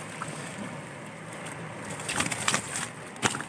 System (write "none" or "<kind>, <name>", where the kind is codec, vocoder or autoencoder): none